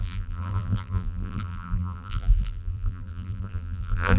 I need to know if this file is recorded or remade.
remade